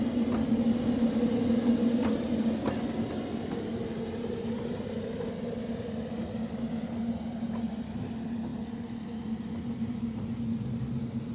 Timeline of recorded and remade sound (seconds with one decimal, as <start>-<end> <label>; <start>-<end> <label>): 0.0-11.3 recorded